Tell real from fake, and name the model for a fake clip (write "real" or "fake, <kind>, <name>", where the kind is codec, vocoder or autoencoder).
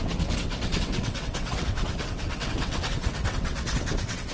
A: fake, vocoder, WaveNeXt